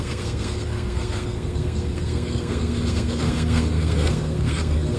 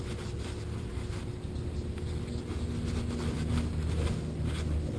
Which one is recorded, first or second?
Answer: second